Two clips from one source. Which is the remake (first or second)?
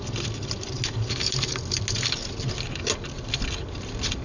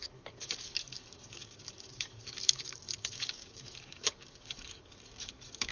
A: second